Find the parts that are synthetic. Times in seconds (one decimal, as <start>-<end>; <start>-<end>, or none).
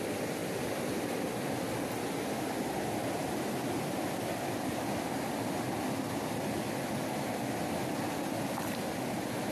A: none